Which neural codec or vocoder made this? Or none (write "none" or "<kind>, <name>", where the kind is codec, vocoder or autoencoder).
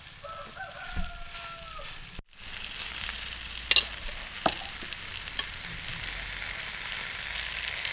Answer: none